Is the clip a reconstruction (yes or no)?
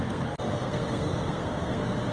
yes